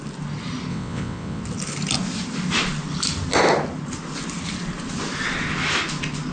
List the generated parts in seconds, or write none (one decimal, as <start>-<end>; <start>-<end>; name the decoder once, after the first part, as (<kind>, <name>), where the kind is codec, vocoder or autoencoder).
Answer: 0.7-1.4 (vocoder, WaveNeXt)